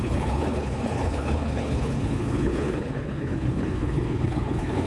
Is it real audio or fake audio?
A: fake